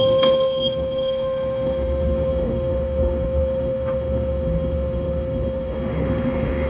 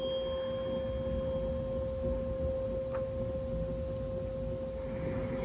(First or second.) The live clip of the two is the second